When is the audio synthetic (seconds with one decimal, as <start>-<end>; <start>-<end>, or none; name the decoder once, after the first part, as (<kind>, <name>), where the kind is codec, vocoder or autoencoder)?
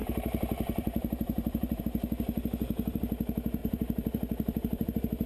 0.0-1.8 (vocoder, BigVGAN v2); 3.6-5.3